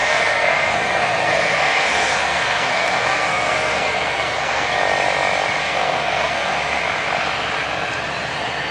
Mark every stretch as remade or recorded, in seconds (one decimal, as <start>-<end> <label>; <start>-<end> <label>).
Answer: 0.0-4.8 remade; 4.8-5.6 recorded; 5.6-6.8 remade; 6.8-8.7 recorded